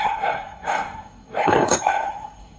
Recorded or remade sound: remade